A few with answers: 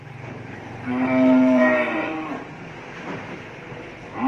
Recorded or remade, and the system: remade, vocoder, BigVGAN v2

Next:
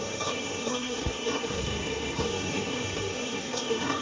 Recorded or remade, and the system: remade, codec, SNAC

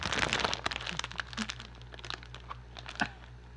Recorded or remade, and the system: recorded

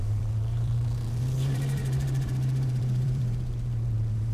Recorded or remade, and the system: remade, vocoder, BigVGAN v2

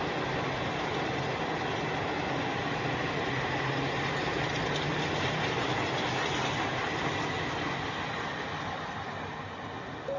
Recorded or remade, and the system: recorded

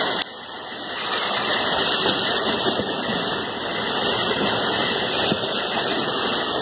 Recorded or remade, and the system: recorded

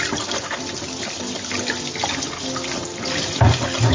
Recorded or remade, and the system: recorded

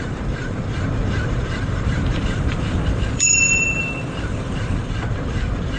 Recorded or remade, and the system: remade, vocoder, BigVGAN v2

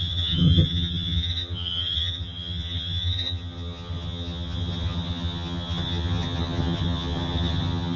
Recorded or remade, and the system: remade, vocoder, HiFi-GAN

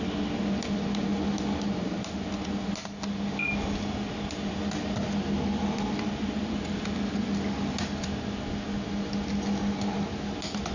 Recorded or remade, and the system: recorded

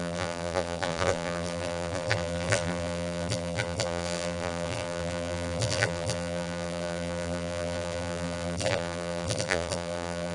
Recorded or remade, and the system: remade, vocoder, BigVGAN v2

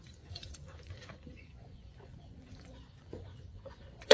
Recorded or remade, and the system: remade, vocoder, Vocos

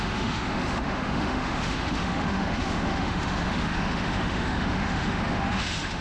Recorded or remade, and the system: remade, autoencoder, DAC-VAE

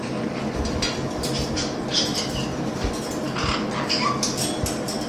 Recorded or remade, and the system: recorded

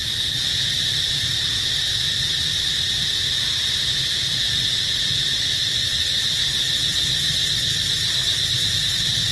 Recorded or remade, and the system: recorded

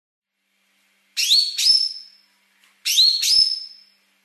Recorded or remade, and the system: recorded